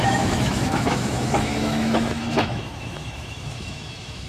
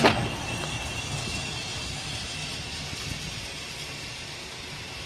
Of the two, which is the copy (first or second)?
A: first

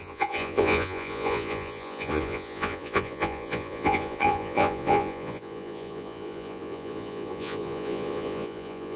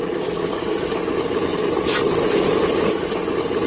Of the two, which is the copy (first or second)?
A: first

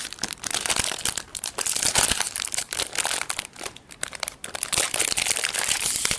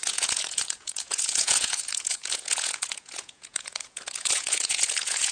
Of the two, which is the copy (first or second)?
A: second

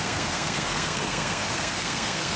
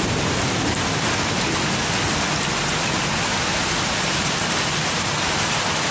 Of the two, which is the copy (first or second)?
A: first